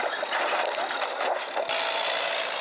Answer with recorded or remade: recorded